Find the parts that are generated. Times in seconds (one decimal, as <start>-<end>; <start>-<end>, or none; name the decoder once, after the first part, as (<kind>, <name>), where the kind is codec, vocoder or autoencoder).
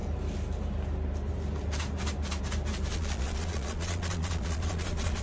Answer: 2.9-5.2 (vocoder, Vocos)